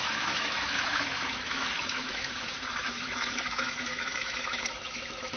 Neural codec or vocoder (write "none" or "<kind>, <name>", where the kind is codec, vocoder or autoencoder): autoencoder, DAC-VAE